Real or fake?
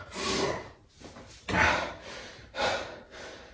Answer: real